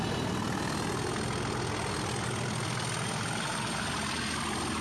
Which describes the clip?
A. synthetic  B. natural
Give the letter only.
B